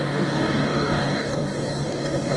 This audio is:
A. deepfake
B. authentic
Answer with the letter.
A